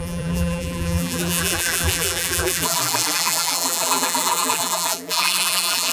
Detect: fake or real fake